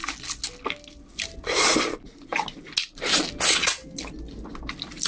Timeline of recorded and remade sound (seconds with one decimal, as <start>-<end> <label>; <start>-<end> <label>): 0.0-4.5 recorded; 4.5-5.1 remade